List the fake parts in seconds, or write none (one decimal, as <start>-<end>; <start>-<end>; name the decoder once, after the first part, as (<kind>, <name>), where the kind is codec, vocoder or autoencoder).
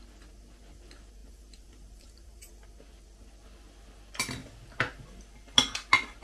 1.2-2.5 (vocoder, BigVGAN v2); 4.4-5.2